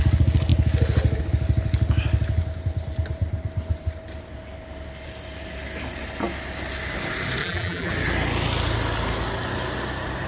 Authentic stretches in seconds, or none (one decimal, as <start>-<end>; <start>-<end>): 0.0-7.4; 7.9-10.3